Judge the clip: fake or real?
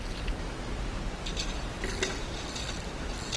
real